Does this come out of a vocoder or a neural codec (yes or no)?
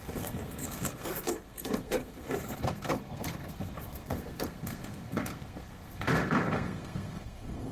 yes